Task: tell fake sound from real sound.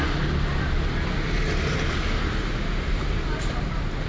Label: real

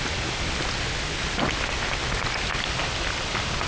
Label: real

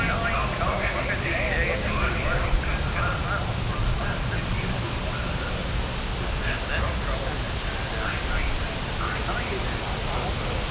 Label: real